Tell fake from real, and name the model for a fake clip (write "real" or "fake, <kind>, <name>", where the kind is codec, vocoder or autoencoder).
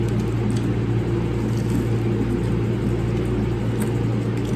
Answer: real